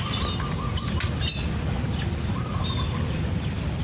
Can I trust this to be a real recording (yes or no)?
yes